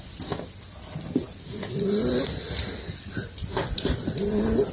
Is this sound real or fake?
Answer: real